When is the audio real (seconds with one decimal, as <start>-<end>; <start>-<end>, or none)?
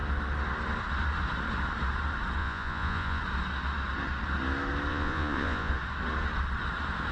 0.0-2.4; 3.2-4.9; 5.7-7.1